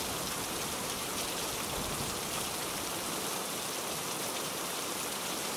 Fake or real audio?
fake